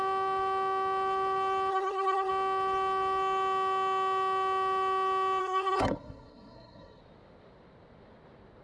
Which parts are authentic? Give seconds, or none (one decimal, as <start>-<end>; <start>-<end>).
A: 0.0-1.7; 2.3-5.4; 7.0-8.6